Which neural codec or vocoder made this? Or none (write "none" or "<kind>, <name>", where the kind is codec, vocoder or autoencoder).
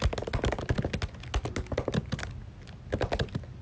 none